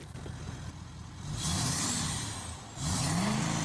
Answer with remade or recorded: recorded